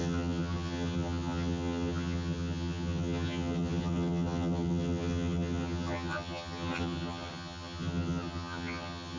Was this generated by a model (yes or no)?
yes